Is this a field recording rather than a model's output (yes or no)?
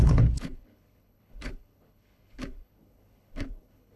no